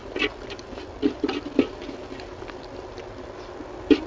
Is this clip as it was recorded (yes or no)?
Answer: yes